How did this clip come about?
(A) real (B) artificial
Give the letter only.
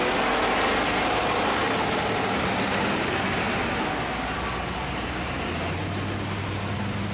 A